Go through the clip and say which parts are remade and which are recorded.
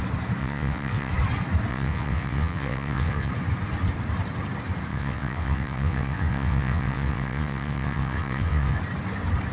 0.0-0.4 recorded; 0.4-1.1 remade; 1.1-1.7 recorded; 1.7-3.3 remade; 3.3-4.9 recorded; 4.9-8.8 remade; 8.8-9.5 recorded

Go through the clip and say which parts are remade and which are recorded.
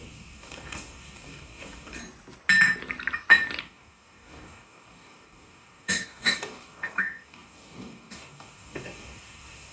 0.0-2.0 remade; 2.0-3.6 recorded; 3.6-9.7 remade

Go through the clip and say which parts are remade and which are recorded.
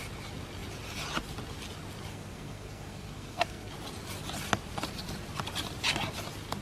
0.0-2.1 recorded; 2.1-3.7 remade; 3.7-6.6 recorded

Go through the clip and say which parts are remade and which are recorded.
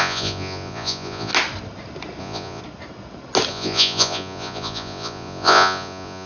0.0-1.3 remade; 1.3-2.2 recorded; 2.2-2.6 remade; 2.6-3.5 recorded; 3.5-6.3 remade